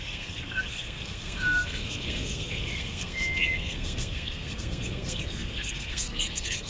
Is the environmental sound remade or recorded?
remade